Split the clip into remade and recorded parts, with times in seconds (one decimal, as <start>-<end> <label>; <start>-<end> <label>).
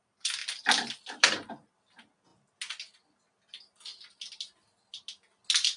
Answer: 0.0-0.4 recorded; 0.4-1.5 remade; 1.5-5.8 recorded